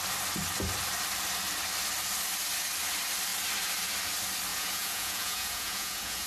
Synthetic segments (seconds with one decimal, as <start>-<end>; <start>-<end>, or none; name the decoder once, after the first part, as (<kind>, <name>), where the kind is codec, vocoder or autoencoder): 4.5-6.3 (vocoder, Vocos)